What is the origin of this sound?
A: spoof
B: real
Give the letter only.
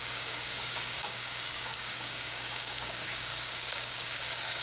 A